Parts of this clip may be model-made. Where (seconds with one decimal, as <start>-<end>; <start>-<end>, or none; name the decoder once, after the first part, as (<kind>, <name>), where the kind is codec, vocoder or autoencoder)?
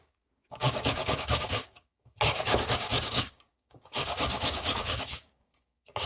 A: 0.0-6.1 (codec, DAC)